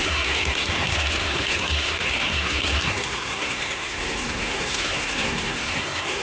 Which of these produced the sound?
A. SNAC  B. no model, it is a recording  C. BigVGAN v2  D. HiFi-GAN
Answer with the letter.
A